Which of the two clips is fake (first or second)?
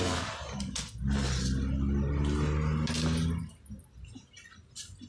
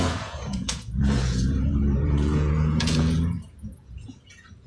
second